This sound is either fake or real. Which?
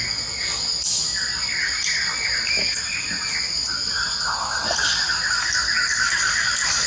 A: real